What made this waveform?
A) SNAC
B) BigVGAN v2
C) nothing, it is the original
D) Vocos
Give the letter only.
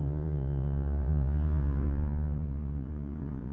D